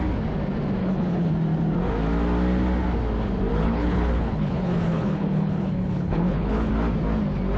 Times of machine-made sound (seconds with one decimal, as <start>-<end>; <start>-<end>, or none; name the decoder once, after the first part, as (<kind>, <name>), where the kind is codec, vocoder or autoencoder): 0.8-1.3 (codec, HILCodec); 3.5-6.7